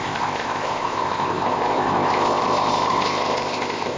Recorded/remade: remade